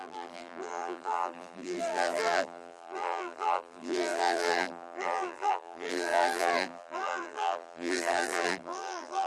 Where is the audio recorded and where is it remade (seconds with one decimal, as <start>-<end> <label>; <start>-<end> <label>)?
0.0-9.3 remade